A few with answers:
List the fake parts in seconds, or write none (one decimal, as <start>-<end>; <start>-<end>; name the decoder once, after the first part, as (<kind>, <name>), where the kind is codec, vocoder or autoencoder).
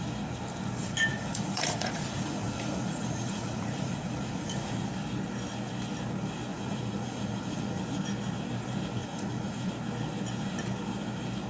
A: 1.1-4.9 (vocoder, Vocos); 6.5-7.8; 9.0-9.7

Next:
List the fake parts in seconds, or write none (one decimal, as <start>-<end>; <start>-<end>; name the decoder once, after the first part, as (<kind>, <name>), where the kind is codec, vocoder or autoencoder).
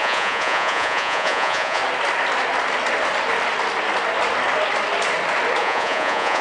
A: 0.0-1.8 (vocoder, Vocos); 5.6-6.4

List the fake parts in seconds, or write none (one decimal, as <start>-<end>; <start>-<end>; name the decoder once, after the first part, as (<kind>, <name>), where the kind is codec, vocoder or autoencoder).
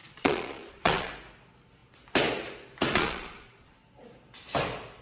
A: 0.0-1.1 (vocoder, Vocos); 2.9-3.7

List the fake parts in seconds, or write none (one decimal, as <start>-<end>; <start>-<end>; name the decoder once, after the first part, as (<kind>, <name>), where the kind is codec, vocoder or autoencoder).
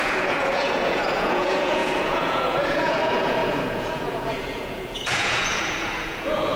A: 0.0-6.6 (vocoder, Vocos)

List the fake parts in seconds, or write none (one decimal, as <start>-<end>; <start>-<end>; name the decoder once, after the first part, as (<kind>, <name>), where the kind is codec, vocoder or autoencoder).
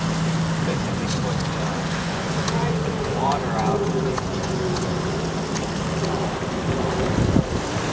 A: 0.7-5.1 (vocoder, Vocos)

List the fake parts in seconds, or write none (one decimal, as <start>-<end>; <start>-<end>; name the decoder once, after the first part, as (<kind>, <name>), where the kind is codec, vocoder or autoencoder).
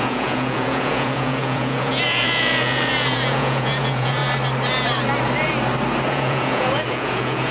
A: 0.0-4.2 (vocoder, Vocos); 6.1-7.5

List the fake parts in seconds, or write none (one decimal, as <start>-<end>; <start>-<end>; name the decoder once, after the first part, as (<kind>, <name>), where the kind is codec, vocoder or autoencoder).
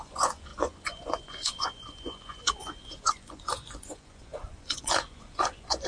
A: 0.0-5.9 (vocoder, Vocos)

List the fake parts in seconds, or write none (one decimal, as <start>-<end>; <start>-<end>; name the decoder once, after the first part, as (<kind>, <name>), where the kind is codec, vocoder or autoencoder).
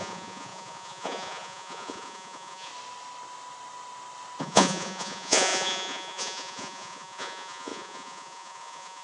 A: 0.0-2.7 (vocoder, Vocos); 4.4-9.0